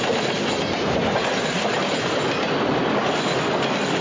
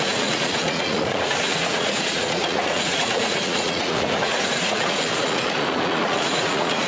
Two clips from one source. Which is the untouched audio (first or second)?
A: first